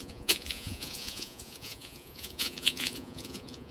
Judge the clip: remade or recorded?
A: remade